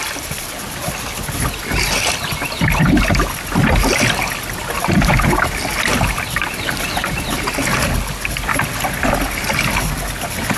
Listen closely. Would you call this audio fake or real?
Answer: real